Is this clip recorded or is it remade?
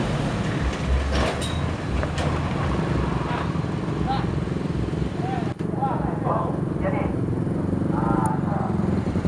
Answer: recorded